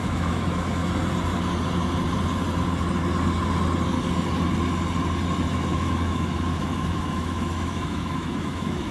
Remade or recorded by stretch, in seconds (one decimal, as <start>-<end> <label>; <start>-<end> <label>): 0.0-0.8 remade; 0.8-5.5 recorded; 5.5-8.9 remade